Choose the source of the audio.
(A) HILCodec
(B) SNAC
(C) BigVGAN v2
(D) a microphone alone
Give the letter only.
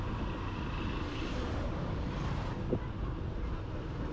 D